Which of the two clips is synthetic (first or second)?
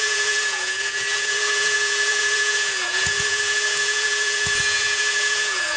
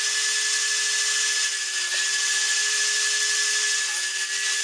first